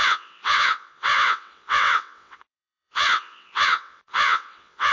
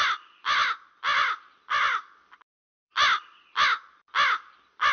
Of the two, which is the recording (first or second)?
second